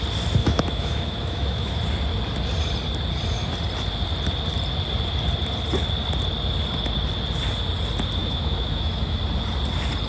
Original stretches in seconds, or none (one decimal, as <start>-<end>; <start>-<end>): 0.0-0.4; 1.8-8.2; 9.2-10.1